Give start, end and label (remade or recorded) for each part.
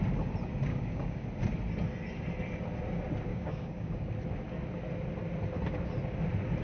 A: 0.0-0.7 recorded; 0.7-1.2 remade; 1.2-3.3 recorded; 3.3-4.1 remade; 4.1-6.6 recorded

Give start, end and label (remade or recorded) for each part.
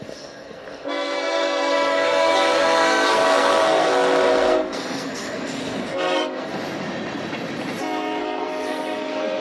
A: 0.0-6.5 remade; 6.5-8.2 recorded; 8.2-9.4 remade